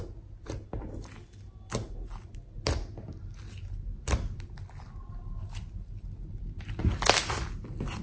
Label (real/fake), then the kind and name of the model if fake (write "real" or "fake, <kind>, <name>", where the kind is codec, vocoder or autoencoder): real